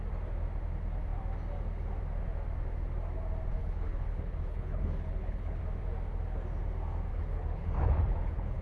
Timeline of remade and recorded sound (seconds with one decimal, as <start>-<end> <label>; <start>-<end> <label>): 0.0-3.6 recorded; 3.6-5.6 remade; 5.6-7.1 recorded; 7.1-8.6 remade